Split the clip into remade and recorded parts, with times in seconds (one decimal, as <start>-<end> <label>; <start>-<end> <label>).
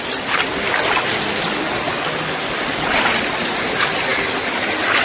0.0-5.0 recorded